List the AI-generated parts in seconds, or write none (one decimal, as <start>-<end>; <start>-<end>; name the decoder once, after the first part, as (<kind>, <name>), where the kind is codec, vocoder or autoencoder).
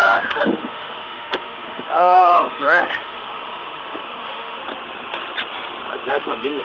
0.0-4.6 (autoencoder, DAC-VAE); 6.1-6.6